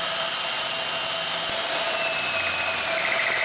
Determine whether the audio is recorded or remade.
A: recorded